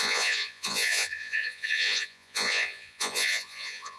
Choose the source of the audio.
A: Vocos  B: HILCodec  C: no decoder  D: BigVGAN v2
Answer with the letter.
A